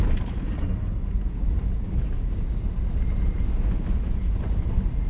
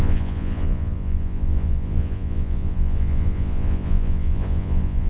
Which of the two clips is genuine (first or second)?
first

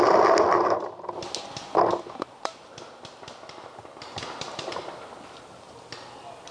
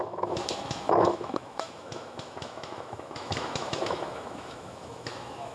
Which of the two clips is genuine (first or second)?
first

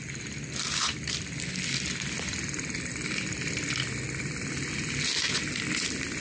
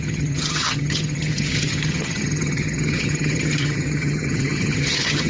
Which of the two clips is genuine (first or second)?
first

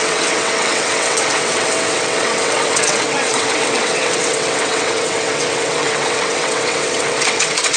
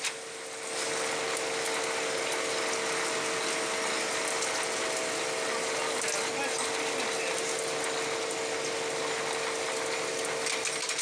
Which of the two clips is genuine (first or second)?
second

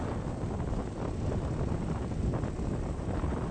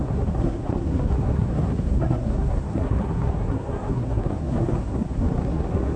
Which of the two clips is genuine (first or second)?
first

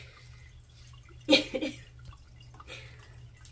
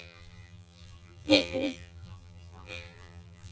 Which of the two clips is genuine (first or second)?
first